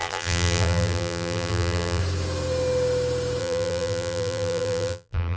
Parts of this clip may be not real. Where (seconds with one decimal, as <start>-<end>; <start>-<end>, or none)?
0.0-2.0; 3.4-5.4